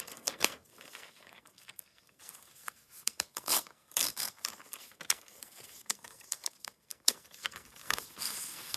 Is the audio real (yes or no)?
no